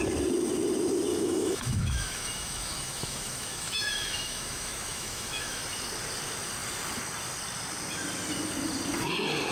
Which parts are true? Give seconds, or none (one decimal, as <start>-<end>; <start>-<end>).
0.0-1.1; 5.6-9.5